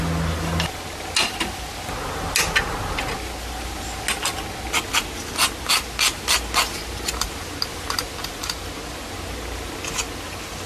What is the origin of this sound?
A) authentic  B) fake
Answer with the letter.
A